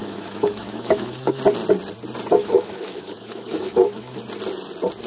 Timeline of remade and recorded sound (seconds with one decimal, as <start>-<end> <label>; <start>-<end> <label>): 0.0-1.4 remade; 1.4-2.4 recorded; 2.4-4.2 remade; 4.2-5.1 recorded